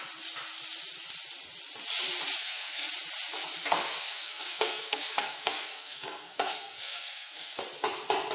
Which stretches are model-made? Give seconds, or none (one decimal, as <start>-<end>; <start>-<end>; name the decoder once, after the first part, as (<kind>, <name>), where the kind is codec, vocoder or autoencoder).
2.4-2.9 (codec, SNAC); 3.6-7.6